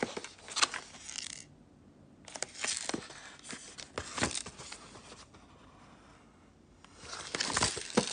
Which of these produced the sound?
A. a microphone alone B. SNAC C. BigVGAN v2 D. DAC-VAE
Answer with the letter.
A